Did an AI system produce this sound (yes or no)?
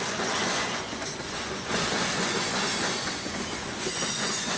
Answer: yes